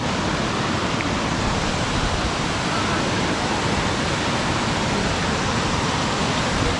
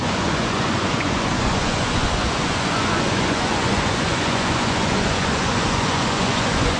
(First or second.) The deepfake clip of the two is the second